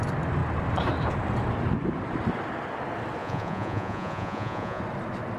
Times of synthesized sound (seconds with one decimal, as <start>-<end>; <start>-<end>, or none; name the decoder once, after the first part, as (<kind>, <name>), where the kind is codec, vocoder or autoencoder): 3.2-4.8 (vocoder, Vocos)